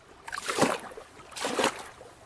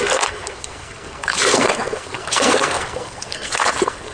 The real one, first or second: first